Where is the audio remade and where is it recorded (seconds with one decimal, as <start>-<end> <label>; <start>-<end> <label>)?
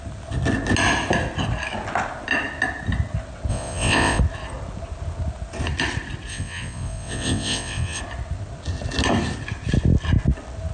0.0-3.5 recorded; 3.5-4.2 remade; 4.2-6.3 recorded; 6.3-8.0 remade; 8.0-10.7 recorded